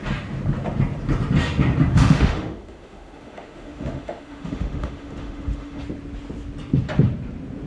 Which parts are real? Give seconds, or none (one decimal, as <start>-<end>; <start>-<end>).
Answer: 0.0-1.9; 5.8-7.7